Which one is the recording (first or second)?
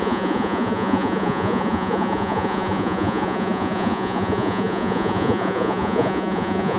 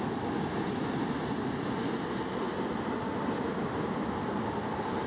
second